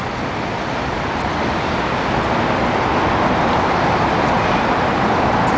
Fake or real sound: real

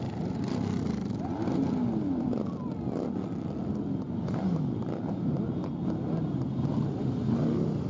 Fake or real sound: real